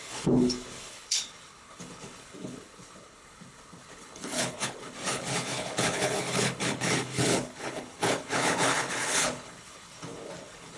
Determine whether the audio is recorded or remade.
remade